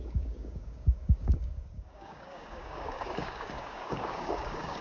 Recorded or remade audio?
remade